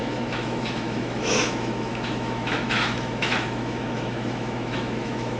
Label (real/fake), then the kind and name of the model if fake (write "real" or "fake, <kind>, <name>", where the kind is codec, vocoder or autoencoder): fake, autoencoder, DAC-VAE